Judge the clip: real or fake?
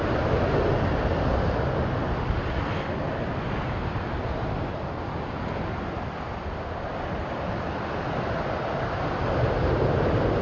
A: real